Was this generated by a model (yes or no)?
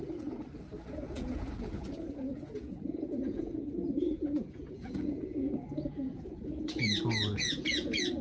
yes